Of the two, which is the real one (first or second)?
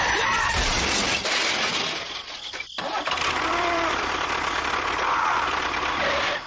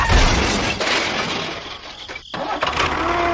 second